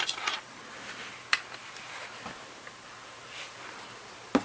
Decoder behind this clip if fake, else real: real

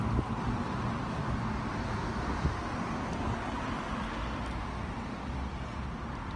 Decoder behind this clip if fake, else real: real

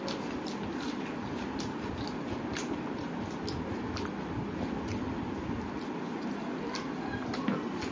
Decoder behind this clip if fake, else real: real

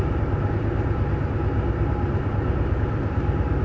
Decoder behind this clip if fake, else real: real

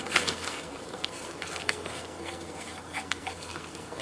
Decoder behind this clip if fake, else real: fake, codec, SNAC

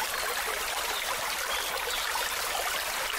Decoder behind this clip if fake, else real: real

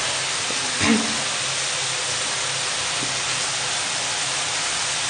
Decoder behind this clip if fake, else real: real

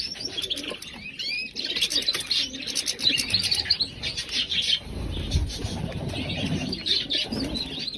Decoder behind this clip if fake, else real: real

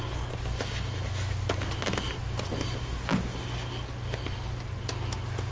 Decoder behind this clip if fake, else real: real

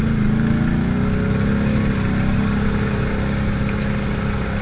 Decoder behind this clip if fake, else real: real